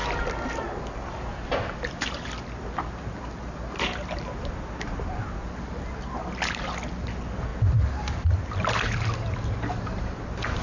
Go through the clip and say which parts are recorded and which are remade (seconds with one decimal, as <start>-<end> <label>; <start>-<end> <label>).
0.0-10.6 recorded